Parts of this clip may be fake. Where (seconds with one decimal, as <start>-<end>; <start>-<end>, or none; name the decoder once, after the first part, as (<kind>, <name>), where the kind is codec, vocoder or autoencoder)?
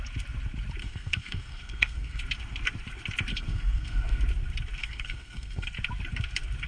0.8-2.2 (codec, SNAC); 3.3-4.2; 4.8-5.7